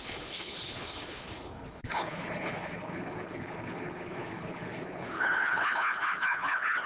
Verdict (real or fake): fake